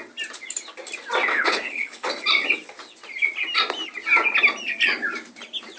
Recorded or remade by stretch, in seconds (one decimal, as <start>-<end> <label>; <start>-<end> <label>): 0.0-1.3 recorded; 1.3-2.1 remade; 2.1-5.8 recorded